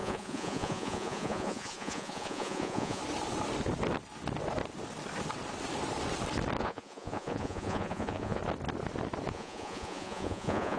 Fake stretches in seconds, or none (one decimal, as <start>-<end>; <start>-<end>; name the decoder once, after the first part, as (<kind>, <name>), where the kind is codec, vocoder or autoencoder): 0.0-3.0 (vocoder, Vocos); 6.6-8.4; 9.3-10.8